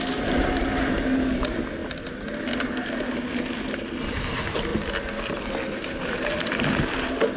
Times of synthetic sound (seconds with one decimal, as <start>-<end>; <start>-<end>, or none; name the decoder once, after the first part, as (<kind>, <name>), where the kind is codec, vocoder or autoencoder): none